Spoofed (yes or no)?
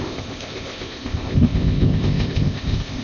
yes